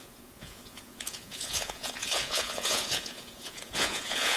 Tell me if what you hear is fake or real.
fake